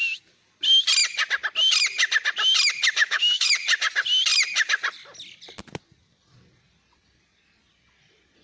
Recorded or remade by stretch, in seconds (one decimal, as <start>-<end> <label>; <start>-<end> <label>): 0.0-3.0 recorded; 3.0-3.5 remade; 3.5-8.4 recorded